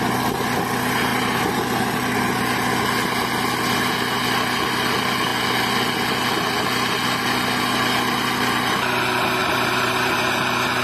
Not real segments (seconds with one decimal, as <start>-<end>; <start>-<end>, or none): 1.1-2.4; 9.4-10.2